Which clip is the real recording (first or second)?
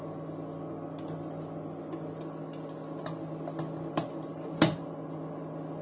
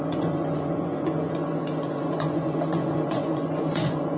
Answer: first